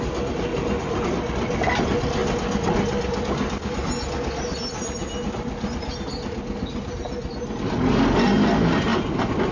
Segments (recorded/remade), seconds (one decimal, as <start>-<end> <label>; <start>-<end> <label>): 0.0-0.5 recorded; 0.5-1.1 remade; 1.1-9.5 recorded